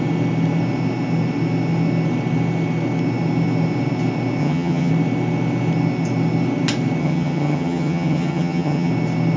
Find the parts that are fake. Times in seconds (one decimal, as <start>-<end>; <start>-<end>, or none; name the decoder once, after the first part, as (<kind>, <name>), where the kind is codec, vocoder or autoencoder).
4.4-4.9 (vocoder, HiFi-GAN); 7.0-8.9